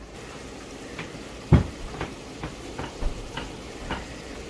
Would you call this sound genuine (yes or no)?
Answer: no